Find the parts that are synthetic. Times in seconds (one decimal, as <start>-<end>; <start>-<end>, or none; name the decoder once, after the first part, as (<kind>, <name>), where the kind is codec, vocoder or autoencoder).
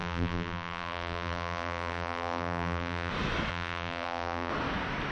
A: 0.0-3.1 (vocoder, BigVGAN v2); 3.5-4.5